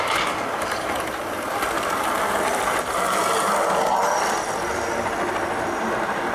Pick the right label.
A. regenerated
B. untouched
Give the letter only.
B